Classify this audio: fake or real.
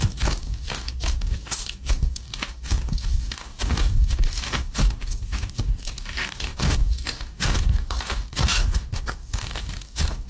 fake